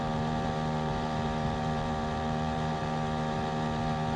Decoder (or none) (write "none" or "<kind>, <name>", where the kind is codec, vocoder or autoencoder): vocoder, BigVGAN v2